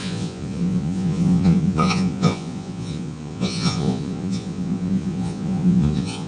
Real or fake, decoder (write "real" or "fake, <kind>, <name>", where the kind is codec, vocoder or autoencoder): fake, vocoder, Vocos